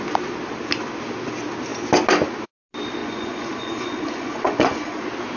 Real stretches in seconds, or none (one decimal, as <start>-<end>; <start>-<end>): 0.0-3.0; 5.0-5.4